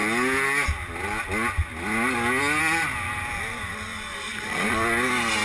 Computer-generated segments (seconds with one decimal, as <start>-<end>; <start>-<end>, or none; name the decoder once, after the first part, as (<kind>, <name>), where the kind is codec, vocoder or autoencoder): 4.1-4.7 (vocoder, BigVGAN v2)